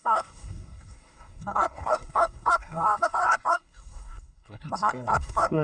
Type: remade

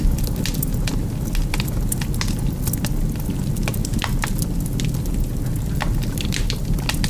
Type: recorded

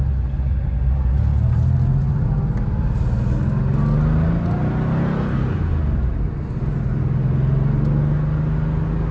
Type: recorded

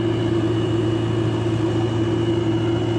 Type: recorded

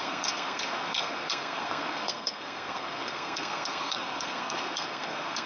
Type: remade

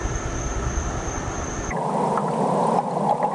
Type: recorded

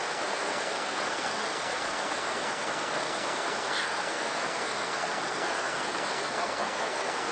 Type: remade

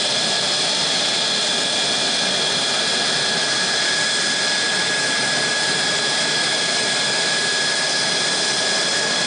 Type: recorded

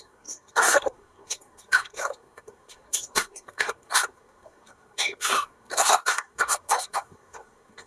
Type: remade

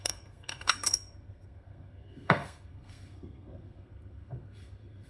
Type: remade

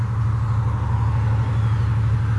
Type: recorded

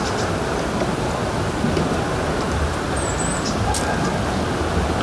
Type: recorded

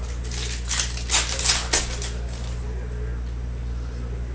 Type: recorded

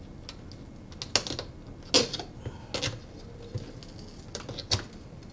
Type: recorded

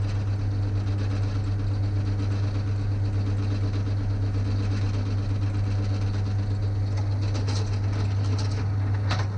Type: recorded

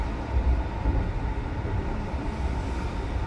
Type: recorded